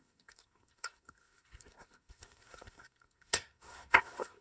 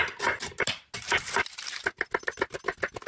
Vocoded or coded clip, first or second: first